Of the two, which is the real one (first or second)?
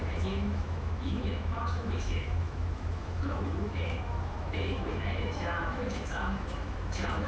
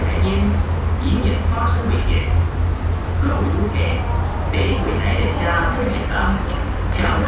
second